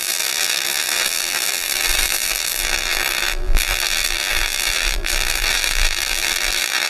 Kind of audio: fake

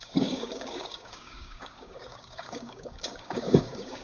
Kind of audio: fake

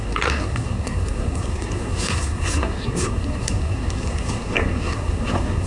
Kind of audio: fake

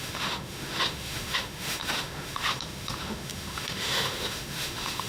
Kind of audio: fake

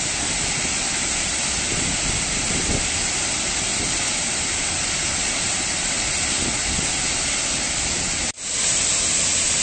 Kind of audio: real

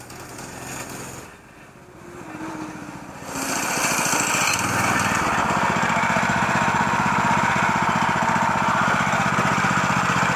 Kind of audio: real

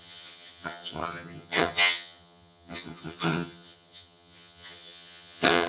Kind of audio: fake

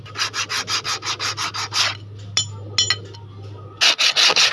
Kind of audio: real